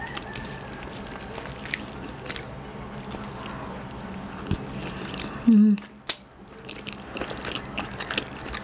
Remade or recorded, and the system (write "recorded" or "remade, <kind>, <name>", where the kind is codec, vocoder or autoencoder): recorded